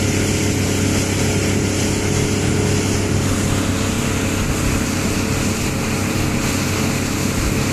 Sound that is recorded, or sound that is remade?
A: recorded